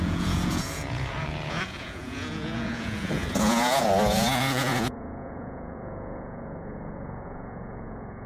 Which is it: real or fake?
fake